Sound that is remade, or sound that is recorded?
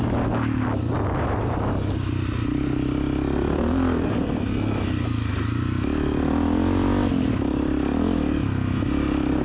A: recorded